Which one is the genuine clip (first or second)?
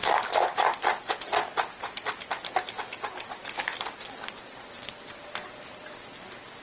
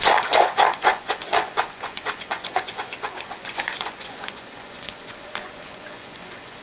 first